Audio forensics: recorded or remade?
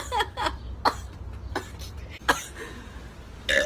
recorded